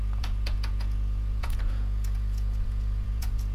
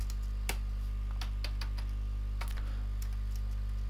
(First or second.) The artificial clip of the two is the first